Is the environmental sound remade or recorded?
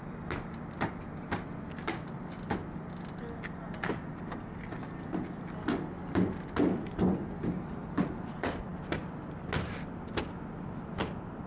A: recorded